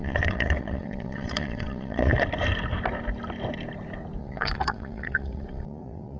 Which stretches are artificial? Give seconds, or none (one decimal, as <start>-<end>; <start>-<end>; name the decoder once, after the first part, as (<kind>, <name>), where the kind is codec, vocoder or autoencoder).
0.0-2.2 (vocoder, WaveNeXt); 4.2-6.2